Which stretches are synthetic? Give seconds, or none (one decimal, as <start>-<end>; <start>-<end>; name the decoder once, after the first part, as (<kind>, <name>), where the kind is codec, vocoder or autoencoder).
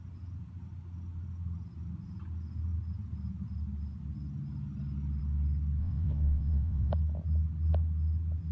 5.8-6.9 (vocoder, WaveNeXt)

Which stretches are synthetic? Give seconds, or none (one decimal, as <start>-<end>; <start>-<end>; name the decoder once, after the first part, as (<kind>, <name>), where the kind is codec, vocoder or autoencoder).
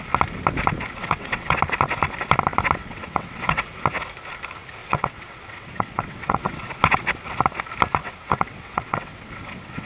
1.0-1.6 (vocoder, WaveNeXt); 2.8-3.6; 4.8-6.7; 8.0-9.9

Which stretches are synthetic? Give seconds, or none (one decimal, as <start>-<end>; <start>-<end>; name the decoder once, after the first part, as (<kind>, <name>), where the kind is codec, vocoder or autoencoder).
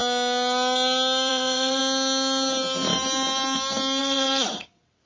1.3-1.8 (vocoder, WaveNeXt); 4.0-5.1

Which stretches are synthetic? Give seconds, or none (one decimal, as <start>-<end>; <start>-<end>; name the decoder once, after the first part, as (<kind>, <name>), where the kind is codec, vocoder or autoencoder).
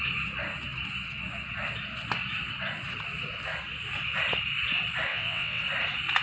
5.1-5.6 (vocoder, WaveNeXt)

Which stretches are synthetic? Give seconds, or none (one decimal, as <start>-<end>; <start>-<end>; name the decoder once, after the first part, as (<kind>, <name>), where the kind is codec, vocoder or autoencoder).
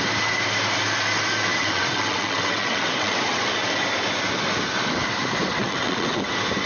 1.5-3.5 (vocoder, WaveNeXt); 5.5-6.3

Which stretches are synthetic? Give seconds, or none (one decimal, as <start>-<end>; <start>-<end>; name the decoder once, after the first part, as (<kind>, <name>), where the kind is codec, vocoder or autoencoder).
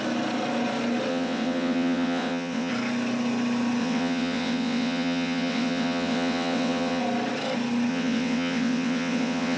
1.1-2.7 (vocoder, WaveNeXt); 3.8-7.0; 7.9-9.6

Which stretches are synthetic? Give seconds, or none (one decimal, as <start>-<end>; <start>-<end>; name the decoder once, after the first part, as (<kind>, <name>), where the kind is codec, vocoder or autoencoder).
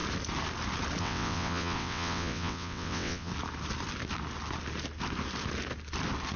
1.0-3.3 (vocoder, WaveNeXt)